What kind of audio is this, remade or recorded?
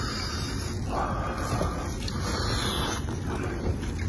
recorded